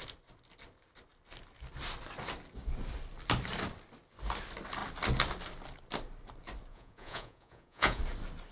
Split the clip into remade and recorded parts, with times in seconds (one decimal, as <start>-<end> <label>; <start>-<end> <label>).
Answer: 0.0-6.7 recorded; 6.7-8.0 remade; 8.0-8.5 recorded

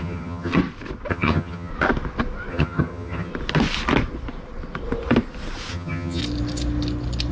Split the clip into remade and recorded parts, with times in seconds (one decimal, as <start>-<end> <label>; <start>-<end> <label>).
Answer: 0.0-0.6 remade; 0.6-1.1 recorded; 1.1-1.7 remade; 1.7-2.5 recorded; 2.5-3.3 remade; 3.3-5.7 recorded; 5.7-6.2 remade; 6.2-7.3 recorded

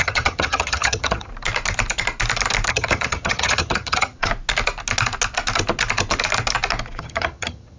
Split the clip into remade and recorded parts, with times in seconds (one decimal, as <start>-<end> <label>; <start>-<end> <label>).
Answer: 0.0-1.3 remade; 1.3-2.7 recorded; 2.7-4.3 remade; 4.3-7.0 recorded; 7.0-7.8 remade

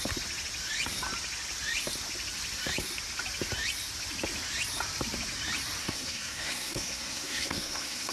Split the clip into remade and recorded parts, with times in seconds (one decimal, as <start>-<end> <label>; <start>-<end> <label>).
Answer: 0.0-5.8 recorded; 5.8-8.1 remade

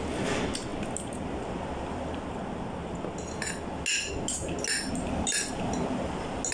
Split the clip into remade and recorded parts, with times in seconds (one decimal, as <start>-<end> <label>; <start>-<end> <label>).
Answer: 0.0-6.5 recorded